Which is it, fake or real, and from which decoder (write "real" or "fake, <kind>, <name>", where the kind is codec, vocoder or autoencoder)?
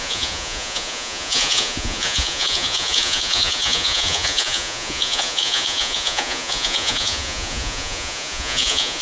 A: fake, vocoder, Vocos